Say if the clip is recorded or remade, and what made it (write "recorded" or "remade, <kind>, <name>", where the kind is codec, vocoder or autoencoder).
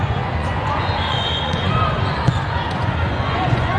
remade, vocoder, Vocos